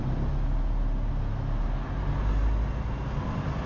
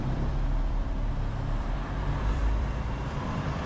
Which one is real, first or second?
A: first